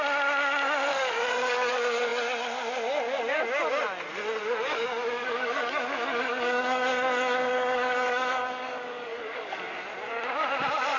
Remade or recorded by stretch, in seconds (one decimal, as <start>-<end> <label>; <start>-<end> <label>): 0.0-0.9 recorded; 0.9-1.7 remade; 1.7-4.4 recorded; 4.4-9.6 remade; 9.6-11.0 recorded